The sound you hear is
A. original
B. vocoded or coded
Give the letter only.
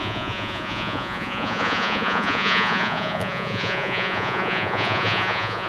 B